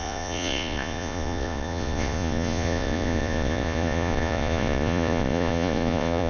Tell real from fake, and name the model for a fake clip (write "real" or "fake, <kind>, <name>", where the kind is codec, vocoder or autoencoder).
fake, vocoder, Vocos